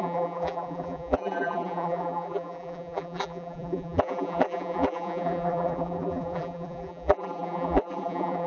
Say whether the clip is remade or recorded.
remade